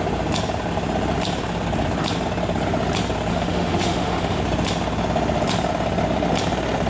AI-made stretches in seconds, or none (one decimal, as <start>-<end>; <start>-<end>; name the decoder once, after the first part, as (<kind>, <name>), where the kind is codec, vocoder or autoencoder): 3.3-4.4 (autoencoder, DAC-VAE)